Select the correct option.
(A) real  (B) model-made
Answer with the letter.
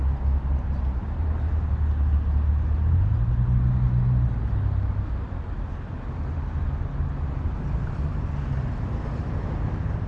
A